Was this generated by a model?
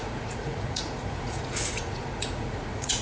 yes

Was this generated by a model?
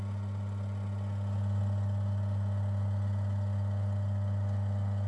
no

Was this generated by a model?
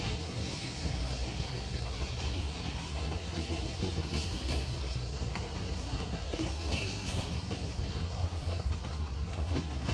yes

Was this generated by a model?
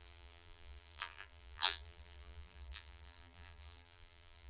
yes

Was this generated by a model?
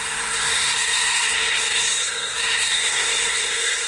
yes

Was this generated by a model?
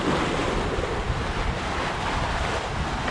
no